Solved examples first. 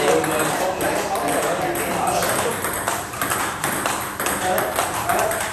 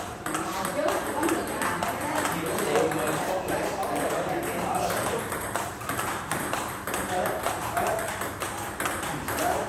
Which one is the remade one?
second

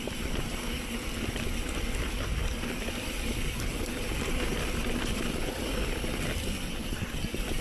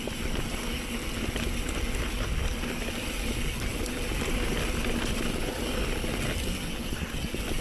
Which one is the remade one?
first